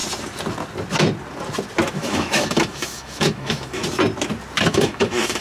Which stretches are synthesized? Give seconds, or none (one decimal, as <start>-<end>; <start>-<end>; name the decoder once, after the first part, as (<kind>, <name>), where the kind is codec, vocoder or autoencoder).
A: 1.9-3.8 (autoencoder, DAC-VAE); 4.7-5.4